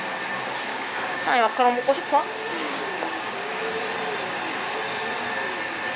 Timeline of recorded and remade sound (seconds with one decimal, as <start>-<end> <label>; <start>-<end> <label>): 0.0-0.7 recorded; 0.7-2.0 remade; 2.0-2.6 recorded; 2.6-3.8 remade; 3.8-6.0 recorded